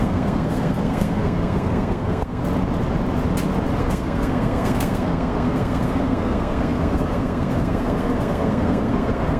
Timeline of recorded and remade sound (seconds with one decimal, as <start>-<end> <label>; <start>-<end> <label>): 0.0-2.4 remade; 2.4-3.8 recorded; 3.8-9.4 remade